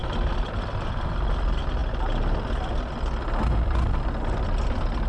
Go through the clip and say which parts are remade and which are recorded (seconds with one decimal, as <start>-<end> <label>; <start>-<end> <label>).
0.0-5.1 recorded